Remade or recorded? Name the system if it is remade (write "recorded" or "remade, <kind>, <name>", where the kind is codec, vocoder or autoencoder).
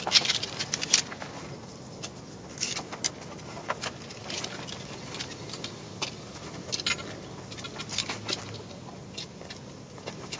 recorded